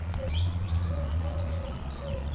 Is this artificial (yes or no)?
yes